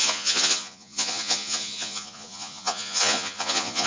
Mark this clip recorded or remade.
remade